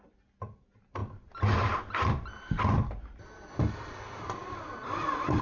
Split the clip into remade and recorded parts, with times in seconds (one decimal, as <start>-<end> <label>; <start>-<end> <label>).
0.0-5.4 recorded